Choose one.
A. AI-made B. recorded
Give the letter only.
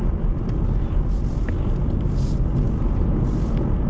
B